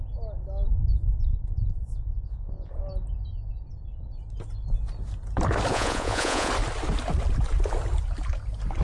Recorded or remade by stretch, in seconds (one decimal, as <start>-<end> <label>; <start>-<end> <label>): 0.0-1.3 recorded; 1.3-2.7 remade; 2.7-5.7 recorded; 5.7-6.5 remade; 6.5-8.8 recorded